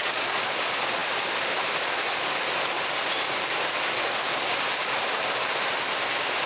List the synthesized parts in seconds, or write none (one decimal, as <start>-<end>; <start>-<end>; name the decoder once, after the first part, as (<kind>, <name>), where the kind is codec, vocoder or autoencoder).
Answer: 0.0-0.6 (vocoder, Vocos)